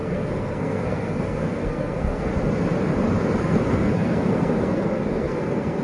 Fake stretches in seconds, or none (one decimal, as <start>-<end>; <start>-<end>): 0.0-2.3; 3.4-5.8